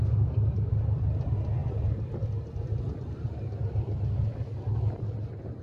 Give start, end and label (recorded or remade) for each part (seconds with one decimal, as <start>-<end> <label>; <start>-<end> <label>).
0.0-0.7 remade; 0.7-5.6 recorded